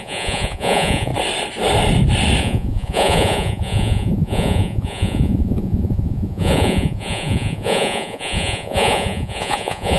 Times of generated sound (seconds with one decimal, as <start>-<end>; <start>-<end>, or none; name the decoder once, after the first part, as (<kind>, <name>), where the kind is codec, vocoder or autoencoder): 0.0-1.1 (vocoder, Vocos); 2.4-10.0